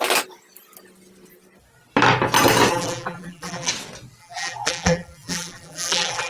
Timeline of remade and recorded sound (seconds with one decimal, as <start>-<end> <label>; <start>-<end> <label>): 0.0-2.7 recorded; 2.7-3.7 remade; 3.7-4.2 recorded; 4.2-6.3 remade